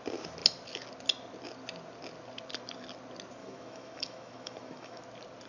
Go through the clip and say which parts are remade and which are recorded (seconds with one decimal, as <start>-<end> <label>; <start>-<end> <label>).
0.0-3.4 recorded; 3.4-5.0 remade; 5.0-5.5 recorded